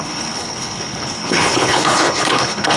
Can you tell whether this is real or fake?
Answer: fake